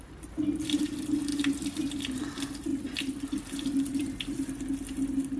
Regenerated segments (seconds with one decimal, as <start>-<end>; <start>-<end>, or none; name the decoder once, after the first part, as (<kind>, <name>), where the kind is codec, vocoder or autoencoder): 0.0-2.7 (vocoder, BigVGAN v2); 3.4-5.4